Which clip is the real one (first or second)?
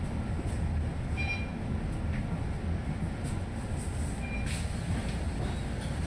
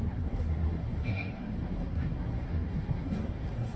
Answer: first